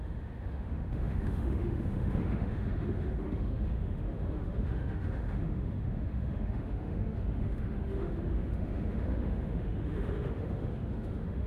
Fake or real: fake